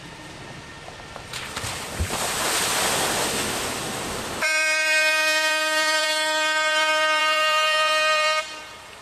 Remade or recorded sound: remade